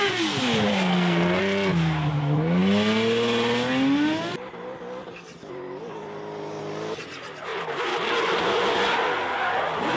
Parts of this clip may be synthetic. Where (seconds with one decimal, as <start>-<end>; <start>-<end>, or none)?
0.7-1.4